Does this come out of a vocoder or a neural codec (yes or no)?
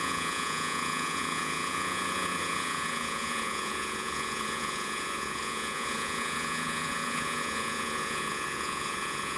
yes